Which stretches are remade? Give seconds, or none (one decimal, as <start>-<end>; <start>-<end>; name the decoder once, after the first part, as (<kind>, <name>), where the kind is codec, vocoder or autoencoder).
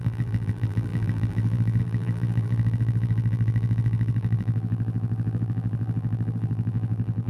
0.0-7.3 (vocoder, BigVGAN v2)